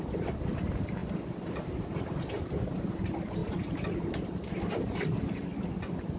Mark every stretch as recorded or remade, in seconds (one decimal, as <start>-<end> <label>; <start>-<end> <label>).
0.0-6.2 recorded